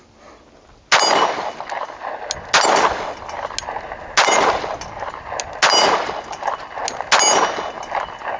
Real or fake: real